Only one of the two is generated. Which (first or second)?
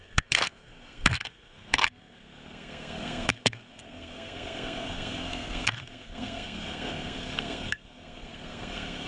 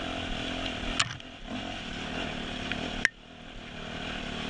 first